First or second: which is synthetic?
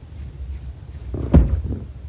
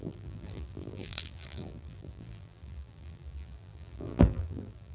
second